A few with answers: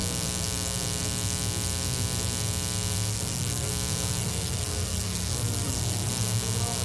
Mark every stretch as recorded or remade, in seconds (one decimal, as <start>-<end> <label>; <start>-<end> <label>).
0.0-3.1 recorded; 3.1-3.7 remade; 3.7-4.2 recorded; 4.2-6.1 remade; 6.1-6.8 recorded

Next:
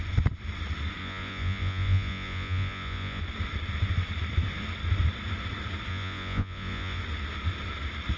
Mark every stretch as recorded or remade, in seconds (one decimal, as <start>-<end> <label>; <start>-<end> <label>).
0.0-1.0 recorded; 1.0-3.2 remade; 3.2-5.9 recorded; 5.9-7.0 remade; 7.0-8.2 recorded

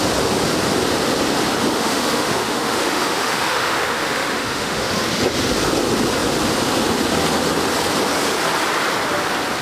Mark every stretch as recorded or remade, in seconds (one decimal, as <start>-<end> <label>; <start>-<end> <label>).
0.0-1.7 recorded; 1.7-4.9 remade; 4.9-9.6 recorded